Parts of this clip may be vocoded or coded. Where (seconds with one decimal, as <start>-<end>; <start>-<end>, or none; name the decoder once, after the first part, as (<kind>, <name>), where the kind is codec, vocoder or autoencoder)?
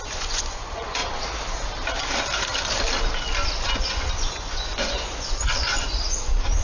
0.0-1.0 (vocoder, Vocos); 3.7-6.6